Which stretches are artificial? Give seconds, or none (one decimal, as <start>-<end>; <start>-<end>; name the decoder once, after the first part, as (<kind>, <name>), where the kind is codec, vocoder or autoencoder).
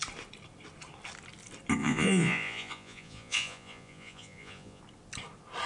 1.8-4.8 (vocoder, Vocos)